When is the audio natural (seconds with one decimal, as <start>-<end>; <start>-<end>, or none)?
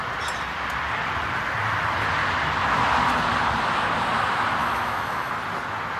0.0-4.6; 5.3-6.0